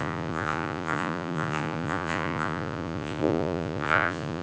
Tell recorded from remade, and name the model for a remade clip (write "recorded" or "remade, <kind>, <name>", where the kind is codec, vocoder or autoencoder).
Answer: remade, vocoder, Vocos